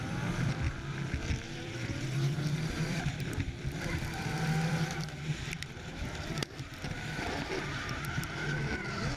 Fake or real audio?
fake